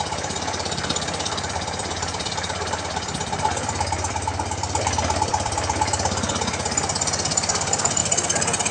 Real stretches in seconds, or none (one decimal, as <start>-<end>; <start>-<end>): 8.0-8.7